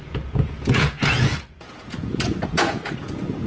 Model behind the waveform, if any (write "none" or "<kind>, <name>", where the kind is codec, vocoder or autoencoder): vocoder, Vocos